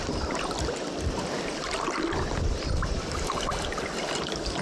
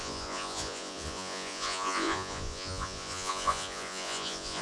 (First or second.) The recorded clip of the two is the first